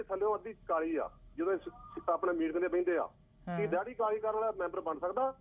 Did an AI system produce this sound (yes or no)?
no